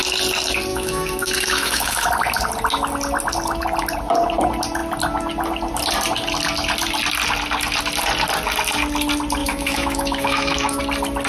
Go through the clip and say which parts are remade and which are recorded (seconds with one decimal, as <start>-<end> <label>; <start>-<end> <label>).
0.0-0.7 recorded; 0.7-2.1 remade; 2.1-9.4 recorded; 9.4-10.8 remade; 10.8-11.3 recorded